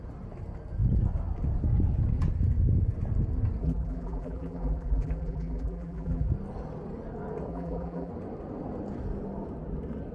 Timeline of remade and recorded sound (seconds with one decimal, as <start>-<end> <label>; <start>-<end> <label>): 0.0-3.6 recorded; 3.6-6.3 remade; 6.3-7.5 recorded; 7.5-8.1 remade; 8.1-10.1 recorded